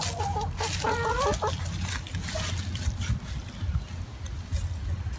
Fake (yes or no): no